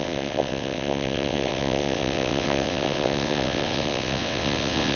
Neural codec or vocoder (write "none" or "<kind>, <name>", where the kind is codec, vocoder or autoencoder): vocoder, WaveNeXt